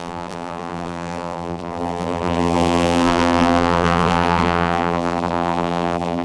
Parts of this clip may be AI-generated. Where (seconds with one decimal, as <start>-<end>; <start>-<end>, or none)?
0.0-6.2